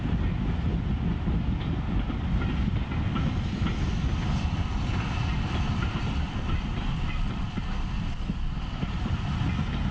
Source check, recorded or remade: recorded